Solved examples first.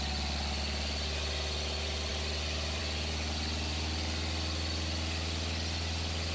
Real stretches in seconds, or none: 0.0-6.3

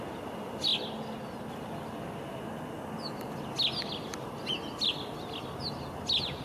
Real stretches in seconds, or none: 0.0-6.4

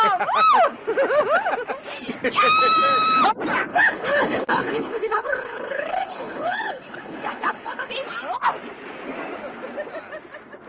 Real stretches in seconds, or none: 0.0-3.7; 7.9-10.7

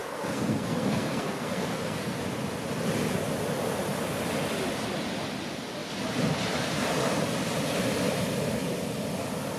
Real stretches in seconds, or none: 2.2-9.6

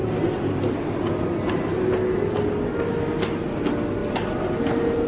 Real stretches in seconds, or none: 0.0-5.1

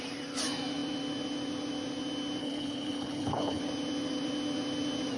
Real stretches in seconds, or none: 0.0-2.4; 3.6-5.2

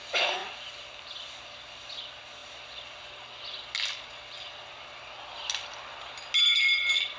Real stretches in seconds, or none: 0.0-7.2